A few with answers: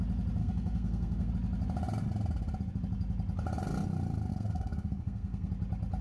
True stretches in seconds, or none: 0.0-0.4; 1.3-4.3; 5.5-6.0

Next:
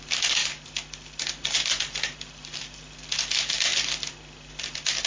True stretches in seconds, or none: 0.0-5.1